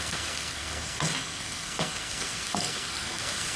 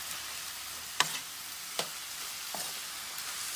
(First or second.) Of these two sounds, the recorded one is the second